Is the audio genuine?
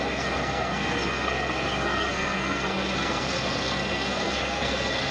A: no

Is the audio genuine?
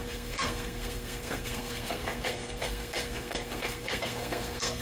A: no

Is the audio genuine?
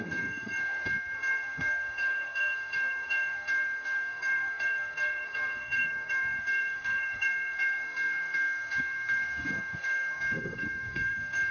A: no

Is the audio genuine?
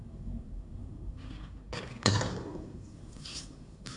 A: no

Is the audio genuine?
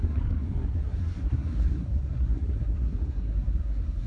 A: no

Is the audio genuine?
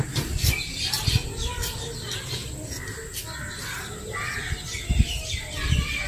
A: yes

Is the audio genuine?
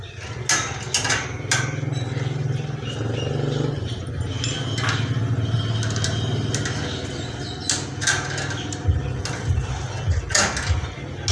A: yes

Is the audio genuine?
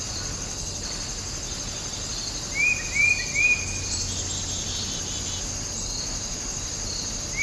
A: yes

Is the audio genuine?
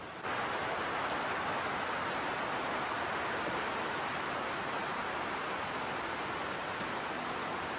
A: yes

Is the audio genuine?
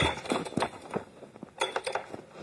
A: yes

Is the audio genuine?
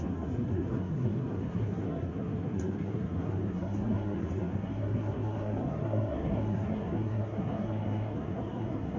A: no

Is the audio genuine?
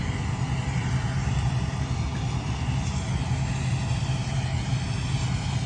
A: yes